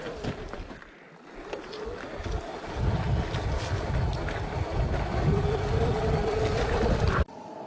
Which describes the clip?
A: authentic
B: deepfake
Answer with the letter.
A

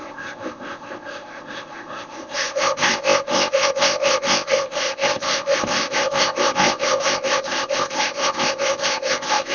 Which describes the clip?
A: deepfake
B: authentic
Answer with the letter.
A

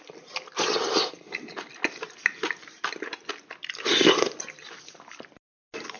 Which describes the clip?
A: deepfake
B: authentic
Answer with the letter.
B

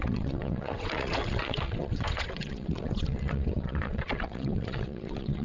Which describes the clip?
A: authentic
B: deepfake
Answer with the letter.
B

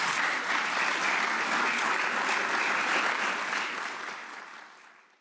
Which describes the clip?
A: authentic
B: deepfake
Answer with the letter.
A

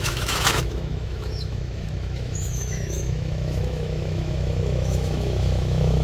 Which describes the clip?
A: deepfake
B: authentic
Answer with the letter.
A